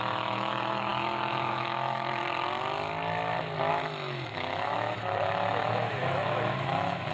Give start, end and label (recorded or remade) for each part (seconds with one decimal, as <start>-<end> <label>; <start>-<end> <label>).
0.0-2.2 remade; 2.2-3.7 recorded; 3.7-7.1 remade

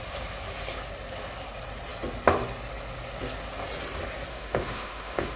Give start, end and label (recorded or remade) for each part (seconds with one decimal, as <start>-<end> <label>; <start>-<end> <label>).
0.0-4.3 recorded; 4.3-5.4 remade

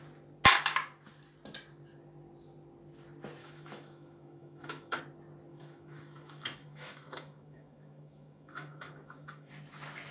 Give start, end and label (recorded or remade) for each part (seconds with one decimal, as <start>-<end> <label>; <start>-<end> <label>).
0.0-3.4 recorded; 3.4-5.0 remade; 5.0-5.5 recorded; 5.5-9.5 remade; 9.5-10.1 recorded